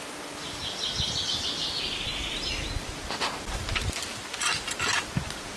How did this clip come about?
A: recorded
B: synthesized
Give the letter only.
A